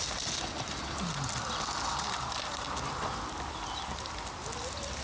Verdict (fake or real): real